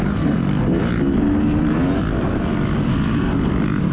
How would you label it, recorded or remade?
recorded